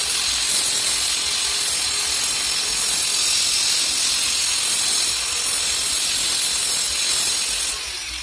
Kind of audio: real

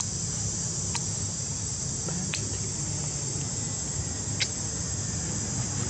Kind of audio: real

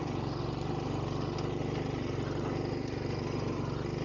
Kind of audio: real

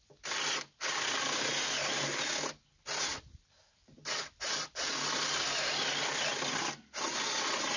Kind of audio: real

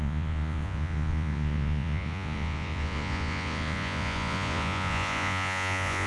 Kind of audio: fake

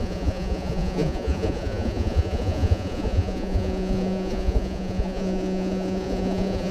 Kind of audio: fake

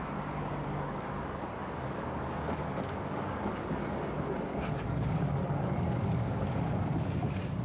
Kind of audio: fake